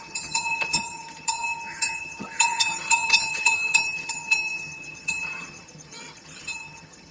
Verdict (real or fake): fake